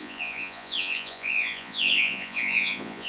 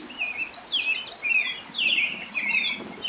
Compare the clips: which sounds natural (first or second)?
second